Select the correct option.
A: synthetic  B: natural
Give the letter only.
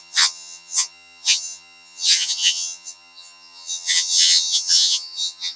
A